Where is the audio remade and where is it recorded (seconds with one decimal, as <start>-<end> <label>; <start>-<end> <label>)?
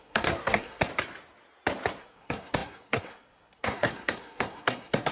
0.0-0.9 remade; 0.9-2.0 recorded; 2.0-5.1 remade